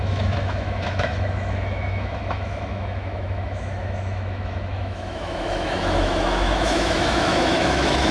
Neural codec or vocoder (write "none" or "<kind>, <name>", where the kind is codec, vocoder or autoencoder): autoencoder, DAC-VAE